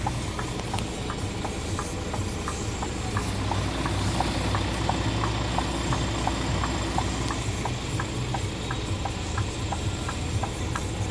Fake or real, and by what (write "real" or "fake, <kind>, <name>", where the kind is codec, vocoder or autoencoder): real